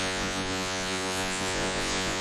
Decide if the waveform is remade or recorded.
remade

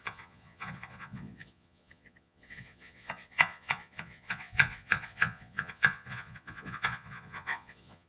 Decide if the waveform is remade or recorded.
remade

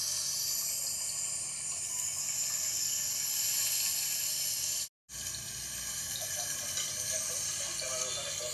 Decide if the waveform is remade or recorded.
recorded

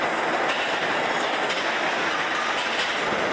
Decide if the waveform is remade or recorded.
recorded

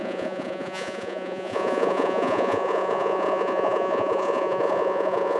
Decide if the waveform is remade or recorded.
remade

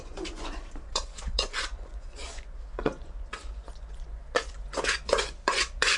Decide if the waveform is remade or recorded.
remade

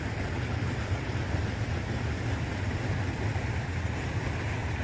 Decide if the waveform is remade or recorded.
recorded